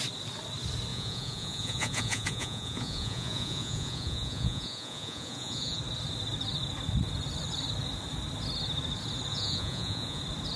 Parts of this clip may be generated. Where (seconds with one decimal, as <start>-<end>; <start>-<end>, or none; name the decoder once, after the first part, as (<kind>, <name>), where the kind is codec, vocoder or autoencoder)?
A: 0.9-5.8 (vocoder, Vocos); 9.3-10.2